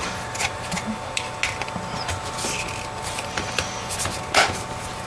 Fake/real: real